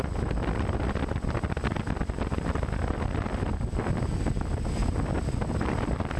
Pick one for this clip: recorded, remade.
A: recorded